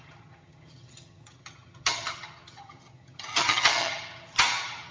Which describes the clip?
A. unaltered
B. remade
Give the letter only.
B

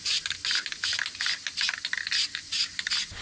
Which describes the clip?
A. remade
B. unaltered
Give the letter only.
B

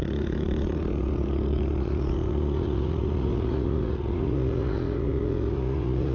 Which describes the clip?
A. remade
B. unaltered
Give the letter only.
A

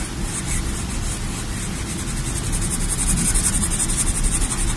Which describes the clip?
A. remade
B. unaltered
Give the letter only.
B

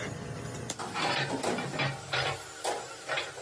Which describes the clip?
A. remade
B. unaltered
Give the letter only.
B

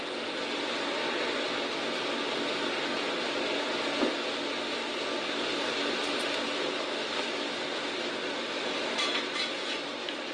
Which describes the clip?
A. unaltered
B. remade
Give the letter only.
A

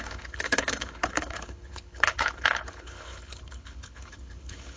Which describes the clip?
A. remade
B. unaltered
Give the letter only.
A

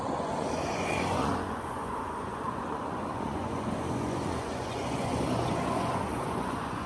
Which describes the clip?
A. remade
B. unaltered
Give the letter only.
A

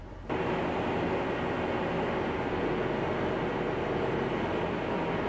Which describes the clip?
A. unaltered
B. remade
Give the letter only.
A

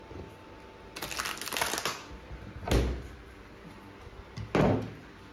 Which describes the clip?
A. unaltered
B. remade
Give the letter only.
A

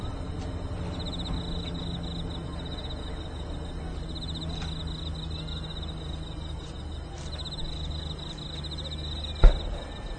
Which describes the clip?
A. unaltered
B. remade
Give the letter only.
A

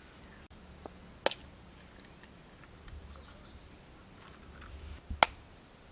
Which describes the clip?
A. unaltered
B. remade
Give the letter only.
A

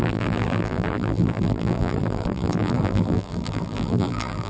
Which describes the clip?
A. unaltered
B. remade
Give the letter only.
B